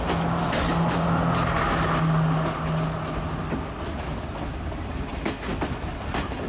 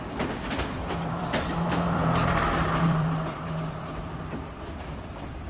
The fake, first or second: second